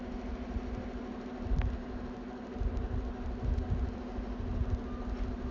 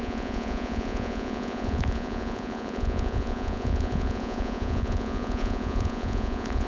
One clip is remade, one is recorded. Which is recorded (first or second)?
first